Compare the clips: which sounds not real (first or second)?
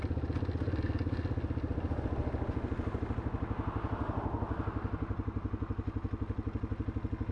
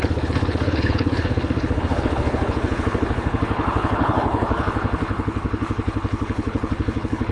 second